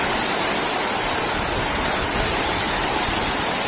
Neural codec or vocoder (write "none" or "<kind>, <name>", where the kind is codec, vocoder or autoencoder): none